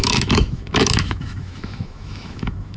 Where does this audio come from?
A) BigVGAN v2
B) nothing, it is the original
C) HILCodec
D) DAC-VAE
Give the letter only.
D